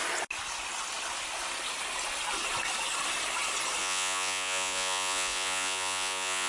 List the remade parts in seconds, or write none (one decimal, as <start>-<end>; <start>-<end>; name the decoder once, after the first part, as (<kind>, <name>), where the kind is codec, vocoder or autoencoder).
3.8-6.5 (vocoder, Vocos)